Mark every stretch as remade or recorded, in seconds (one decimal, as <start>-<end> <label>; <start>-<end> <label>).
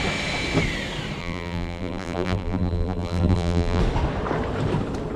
0.0-1.2 recorded; 1.2-3.8 remade; 3.8-5.2 recorded